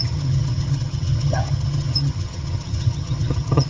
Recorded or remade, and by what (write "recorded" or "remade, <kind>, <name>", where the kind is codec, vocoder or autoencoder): remade, vocoder, HiFi-GAN